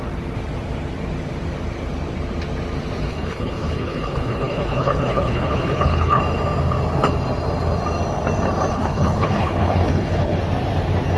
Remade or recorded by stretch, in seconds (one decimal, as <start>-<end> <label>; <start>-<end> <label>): 0.0-3.1 recorded; 3.1-6.2 remade; 6.2-8.7 recorded; 8.7-10.4 remade; 10.4-11.2 recorded